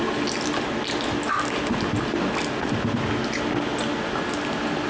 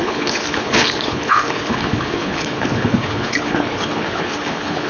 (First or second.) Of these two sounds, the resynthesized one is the second